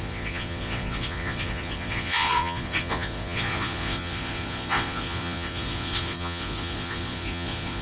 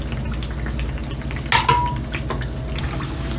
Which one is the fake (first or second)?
first